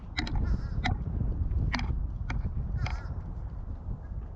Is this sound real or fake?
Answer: real